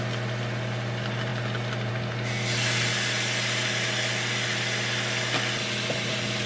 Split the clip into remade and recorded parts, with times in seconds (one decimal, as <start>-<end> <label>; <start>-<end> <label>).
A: 0.0-6.5 recorded

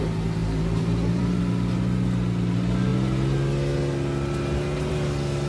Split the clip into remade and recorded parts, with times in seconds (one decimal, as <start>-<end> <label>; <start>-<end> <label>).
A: 0.0-0.4 recorded; 0.4-1.4 remade; 1.4-5.5 recorded

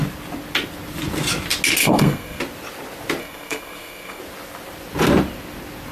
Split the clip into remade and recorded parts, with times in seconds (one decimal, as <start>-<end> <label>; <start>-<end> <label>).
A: 0.0-1.8 recorded; 1.8-2.4 remade; 2.4-3.2 recorded; 3.2-4.2 remade; 4.2-5.9 recorded

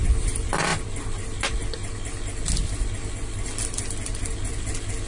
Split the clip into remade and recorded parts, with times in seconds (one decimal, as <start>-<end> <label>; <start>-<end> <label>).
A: 0.0-5.1 recorded

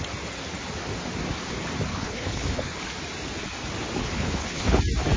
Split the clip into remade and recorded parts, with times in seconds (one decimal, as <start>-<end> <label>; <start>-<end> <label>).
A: 0.0-1.9 recorded; 1.9-2.8 remade; 2.8-4.0 recorded; 4.0-4.8 remade; 4.8-5.2 recorded

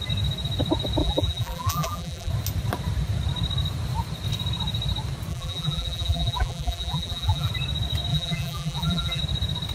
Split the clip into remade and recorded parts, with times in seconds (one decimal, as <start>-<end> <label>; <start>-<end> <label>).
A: 0.0-1.0 recorded; 1.0-2.3 remade; 2.3-5.3 recorded; 5.3-7.5 remade; 7.5-8.1 recorded; 8.1-9.2 remade; 9.2-9.7 recorded

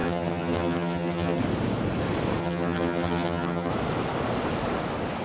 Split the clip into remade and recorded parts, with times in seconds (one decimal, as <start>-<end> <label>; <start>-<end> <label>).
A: 0.0-1.4 remade; 1.4-2.4 recorded; 2.4-3.7 remade; 3.7-5.2 recorded